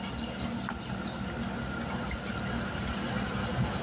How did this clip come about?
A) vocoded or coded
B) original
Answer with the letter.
B